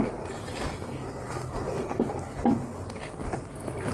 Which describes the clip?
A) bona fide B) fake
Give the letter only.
A